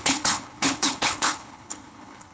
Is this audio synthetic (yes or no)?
yes